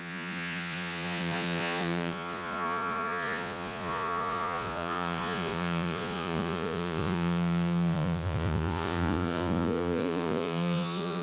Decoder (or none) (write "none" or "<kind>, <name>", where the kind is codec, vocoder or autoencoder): vocoder, Vocos